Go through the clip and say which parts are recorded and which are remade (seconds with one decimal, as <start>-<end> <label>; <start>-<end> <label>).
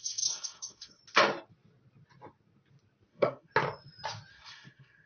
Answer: 0.0-1.0 remade; 1.0-3.1 recorded; 3.1-3.5 remade; 3.5-4.3 recorded; 4.3-5.1 remade